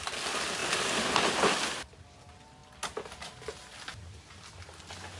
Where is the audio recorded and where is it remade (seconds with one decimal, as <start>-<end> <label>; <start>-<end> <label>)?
0.0-5.2 recorded